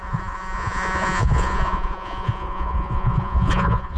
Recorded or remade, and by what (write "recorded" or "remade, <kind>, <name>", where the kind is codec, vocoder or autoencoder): remade, vocoder, Vocos